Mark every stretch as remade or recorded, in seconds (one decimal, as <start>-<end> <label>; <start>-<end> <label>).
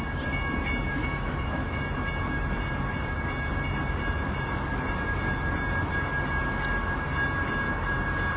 0.0-1.0 recorded; 1.0-1.8 remade; 1.8-8.4 recorded